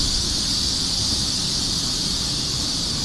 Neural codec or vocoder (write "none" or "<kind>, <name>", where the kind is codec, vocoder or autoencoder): vocoder, BigVGAN v2